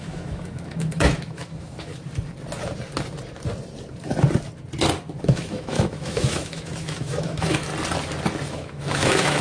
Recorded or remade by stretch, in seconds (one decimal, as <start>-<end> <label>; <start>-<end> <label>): 0.0-1.9 remade; 1.9-5.2 recorded; 5.2-7.7 remade; 7.7-8.5 recorded; 8.5-9.4 remade